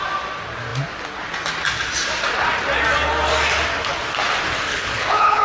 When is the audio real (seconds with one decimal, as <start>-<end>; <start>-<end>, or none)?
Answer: 0.0-4.7